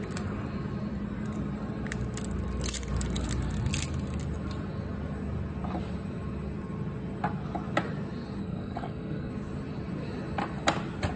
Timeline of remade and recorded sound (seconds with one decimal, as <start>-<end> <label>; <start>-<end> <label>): 0.0-8.4 recorded; 8.4-9.3 remade; 9.3-11.2 recorded